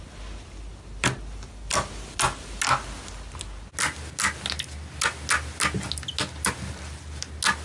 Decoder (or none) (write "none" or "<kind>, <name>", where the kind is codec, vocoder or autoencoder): none